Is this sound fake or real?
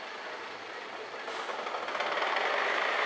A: real